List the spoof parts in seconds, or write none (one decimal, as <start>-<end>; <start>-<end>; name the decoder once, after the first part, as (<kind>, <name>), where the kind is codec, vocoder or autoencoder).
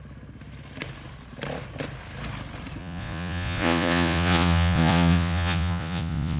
2.8-6.4 (vocoder, Vocos)